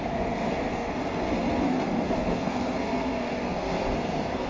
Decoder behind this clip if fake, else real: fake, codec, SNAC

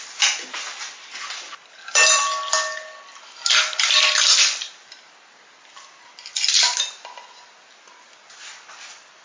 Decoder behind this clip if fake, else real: real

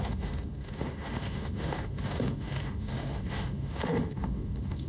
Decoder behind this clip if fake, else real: fake, autoencoder, DAC-VAE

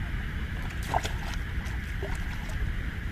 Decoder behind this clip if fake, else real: real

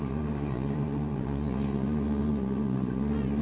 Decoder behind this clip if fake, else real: fake, vocoder, Vocos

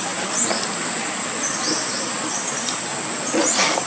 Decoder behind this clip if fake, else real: real